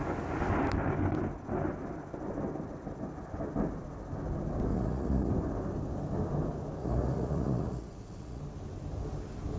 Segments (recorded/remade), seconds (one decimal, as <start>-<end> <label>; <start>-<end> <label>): 0.0-4.7 recorded; 4.7-5.3 remade; 5.3-6.8 recorded; 6.8-8.4 remade; 8.4-9.6 recorded